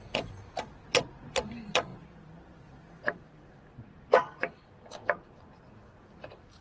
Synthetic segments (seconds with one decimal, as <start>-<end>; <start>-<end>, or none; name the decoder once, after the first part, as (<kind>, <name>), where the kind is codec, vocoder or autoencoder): none